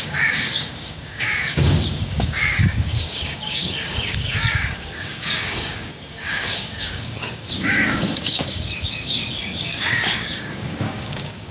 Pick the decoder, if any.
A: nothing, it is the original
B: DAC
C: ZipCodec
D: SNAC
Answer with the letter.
B